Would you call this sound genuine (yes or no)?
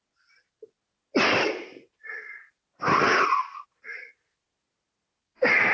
yes